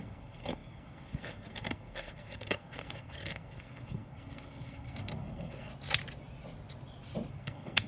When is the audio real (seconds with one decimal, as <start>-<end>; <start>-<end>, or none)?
5.7-7.3